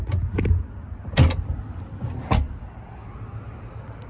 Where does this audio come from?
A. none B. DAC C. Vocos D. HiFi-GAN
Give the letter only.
A